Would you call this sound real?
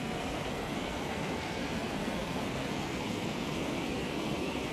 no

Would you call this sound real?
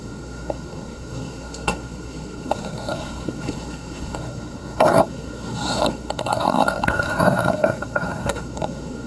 no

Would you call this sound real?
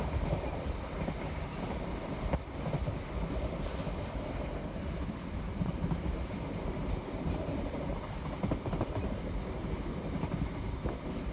yes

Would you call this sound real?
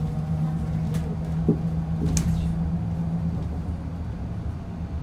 yes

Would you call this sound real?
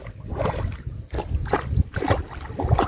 yes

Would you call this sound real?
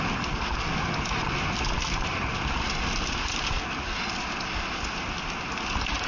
yes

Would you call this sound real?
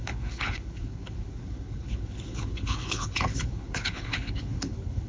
no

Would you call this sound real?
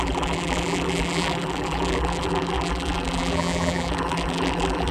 no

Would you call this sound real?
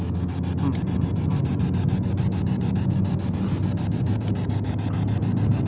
yes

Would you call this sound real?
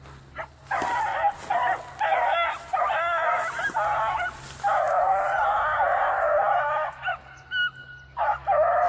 yes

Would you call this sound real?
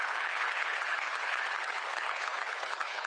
no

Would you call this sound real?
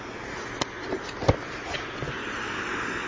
yes